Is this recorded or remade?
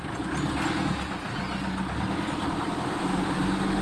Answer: recorded